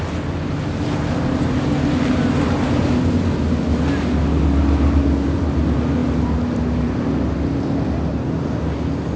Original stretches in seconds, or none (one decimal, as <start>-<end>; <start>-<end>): 0.0-9.2